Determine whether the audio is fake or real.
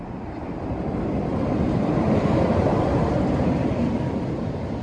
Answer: fake